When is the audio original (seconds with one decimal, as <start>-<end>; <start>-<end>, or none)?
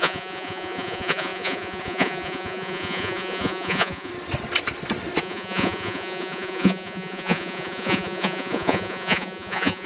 4.1-5.2